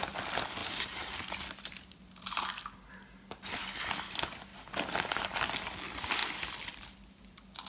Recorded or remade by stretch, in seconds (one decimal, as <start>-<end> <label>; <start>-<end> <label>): 0.0-7.7 recorded